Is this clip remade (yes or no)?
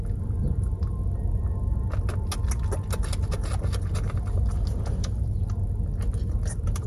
no